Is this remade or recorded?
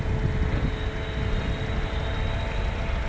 recorded